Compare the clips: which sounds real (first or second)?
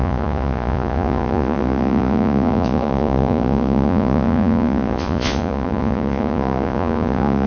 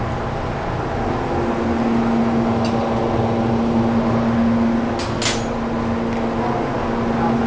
second